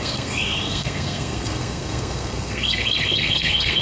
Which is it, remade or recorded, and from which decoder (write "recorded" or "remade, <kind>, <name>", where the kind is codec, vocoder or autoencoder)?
remade, codec, SNAC